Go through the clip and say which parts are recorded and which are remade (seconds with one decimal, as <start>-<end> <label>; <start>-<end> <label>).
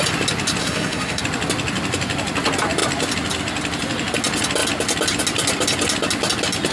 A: 0.0-0.6 recorded; 0.6-1.2 remade; 1.2-6.7 recorded